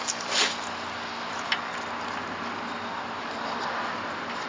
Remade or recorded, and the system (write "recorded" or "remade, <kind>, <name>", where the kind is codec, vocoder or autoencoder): recorded